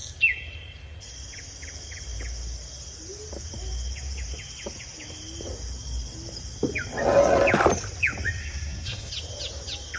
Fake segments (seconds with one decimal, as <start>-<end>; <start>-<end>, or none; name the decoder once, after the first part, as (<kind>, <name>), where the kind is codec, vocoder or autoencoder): 8.4-9.1 (codec, SNAC)